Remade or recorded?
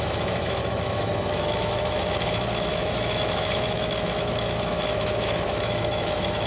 remade